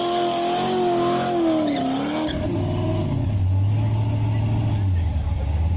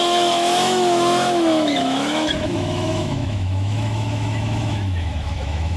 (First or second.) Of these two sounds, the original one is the first